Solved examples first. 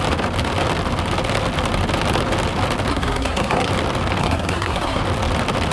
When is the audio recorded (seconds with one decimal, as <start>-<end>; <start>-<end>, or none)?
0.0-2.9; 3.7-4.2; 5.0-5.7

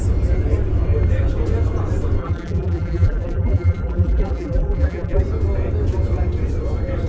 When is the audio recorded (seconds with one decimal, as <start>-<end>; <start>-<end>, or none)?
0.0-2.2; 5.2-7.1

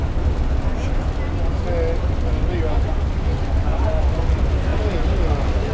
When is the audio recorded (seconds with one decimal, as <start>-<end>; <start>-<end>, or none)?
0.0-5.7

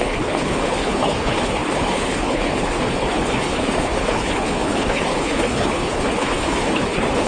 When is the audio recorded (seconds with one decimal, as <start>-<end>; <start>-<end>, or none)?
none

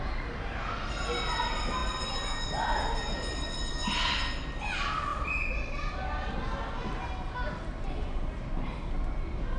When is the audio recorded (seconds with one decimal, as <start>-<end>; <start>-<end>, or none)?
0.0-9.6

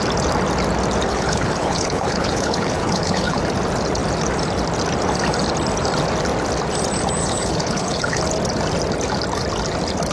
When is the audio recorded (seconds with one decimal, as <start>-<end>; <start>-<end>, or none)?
0.0-1.1; 3.4-7.2; 8.2-10.1

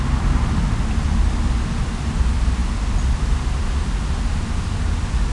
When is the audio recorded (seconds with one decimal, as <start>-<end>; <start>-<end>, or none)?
0.0-5.3

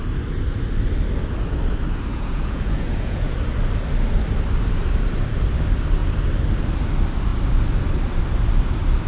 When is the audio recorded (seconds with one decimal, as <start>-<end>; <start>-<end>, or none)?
0.0-2.1; 3.3-9.1